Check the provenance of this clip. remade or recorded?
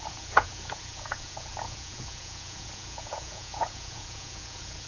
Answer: remade